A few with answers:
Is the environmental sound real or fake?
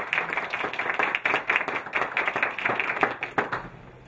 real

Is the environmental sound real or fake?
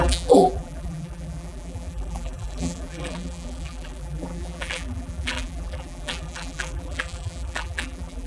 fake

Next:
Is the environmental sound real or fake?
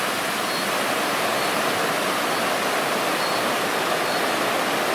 fake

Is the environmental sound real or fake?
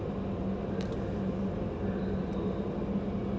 real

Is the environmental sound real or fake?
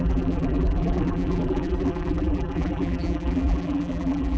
fake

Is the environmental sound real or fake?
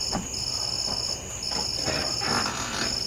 real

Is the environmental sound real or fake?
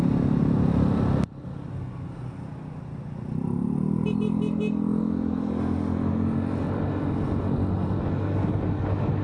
real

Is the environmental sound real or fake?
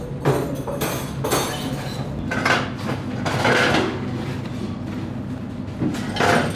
real